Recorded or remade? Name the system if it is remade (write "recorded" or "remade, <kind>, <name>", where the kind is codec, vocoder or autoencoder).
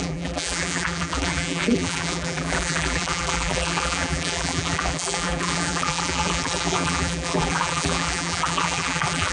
remade, vocoder, BigVGAN v2